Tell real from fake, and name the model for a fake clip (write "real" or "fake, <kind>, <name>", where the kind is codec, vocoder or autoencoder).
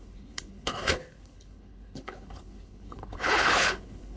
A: fake, codec, HILCodec